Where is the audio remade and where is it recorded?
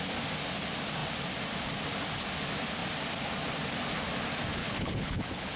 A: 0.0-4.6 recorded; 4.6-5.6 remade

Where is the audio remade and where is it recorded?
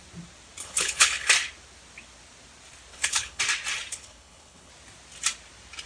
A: 0.0-0.6 recorded; 0.6-1.3 remade; 1.3-2.9 recorded; 2.9-3.4 remade; 3.4-3.9 recorded; 3.9-4.7 remade; 4.7-5.9 recorded